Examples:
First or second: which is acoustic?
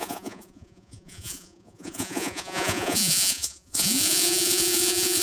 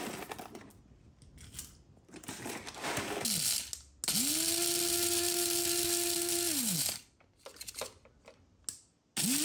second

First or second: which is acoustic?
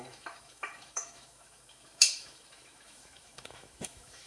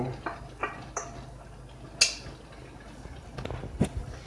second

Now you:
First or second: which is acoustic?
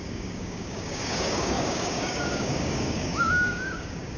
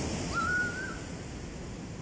second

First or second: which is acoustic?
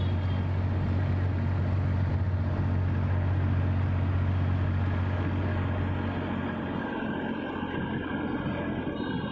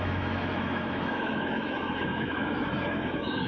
first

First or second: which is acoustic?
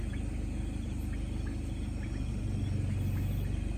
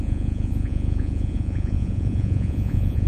first